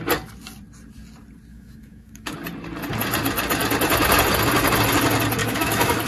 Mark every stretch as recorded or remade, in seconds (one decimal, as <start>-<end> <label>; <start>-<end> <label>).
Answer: 0.0-1.5 recorded; 1.5-2.3 remade; 2.3-5.4 recorded; 5.4-6.1 remade